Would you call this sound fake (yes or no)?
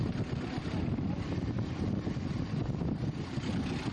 no